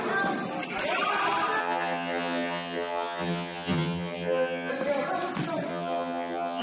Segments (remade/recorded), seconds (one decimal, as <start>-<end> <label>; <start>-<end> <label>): 0.0-1.6 recorded; 1.6-4.7 remade; 4.7-5.7 recorded; 5.7-6.6 remade